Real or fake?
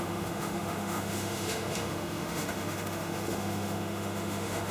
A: fake